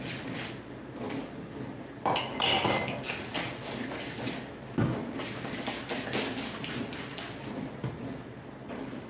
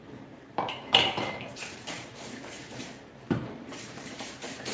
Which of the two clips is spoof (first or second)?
second